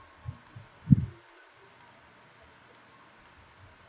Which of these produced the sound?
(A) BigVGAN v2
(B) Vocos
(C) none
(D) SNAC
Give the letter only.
C